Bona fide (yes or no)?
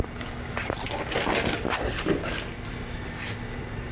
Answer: yes